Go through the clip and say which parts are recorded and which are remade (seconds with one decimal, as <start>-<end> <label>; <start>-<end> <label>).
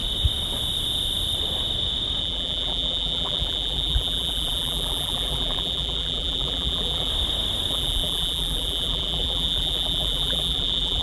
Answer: 0.0-2.2 recorded; 2.2-7.1 remade; 7.1-7.7 recorded; 7.7-11.0 remade